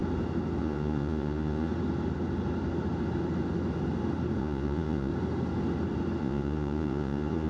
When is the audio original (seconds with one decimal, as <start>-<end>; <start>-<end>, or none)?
0.0-0.6; 1.7-4.4; 5.1-6.2